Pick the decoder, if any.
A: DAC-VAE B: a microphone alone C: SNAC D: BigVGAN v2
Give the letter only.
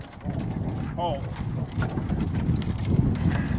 B